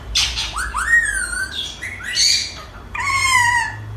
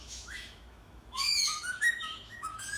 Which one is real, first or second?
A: first